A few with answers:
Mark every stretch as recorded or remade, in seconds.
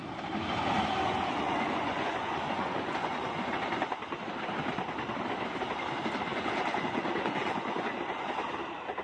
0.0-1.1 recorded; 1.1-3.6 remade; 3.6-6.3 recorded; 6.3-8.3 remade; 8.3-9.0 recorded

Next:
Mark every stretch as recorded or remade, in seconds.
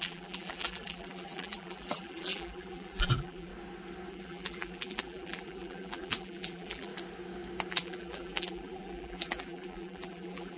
0.0-3.5 remade; 3.5-4.1 recorded; 4.1-6.9 remade; 6.9-7.7 recorded; 7.7-10.6 remade